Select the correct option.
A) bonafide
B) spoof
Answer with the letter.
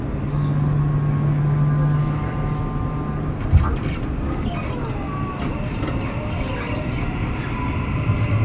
A